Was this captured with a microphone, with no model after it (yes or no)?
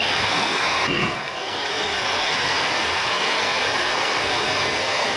no